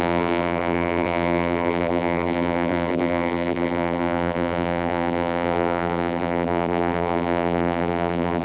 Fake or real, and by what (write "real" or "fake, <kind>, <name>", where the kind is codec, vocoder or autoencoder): fake, vocoder, BigVGAN v2